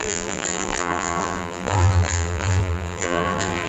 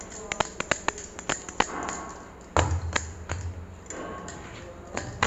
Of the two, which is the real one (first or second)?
second